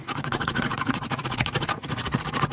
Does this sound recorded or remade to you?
remade